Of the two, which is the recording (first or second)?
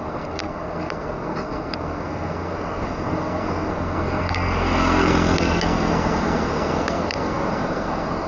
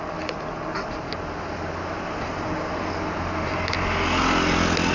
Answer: second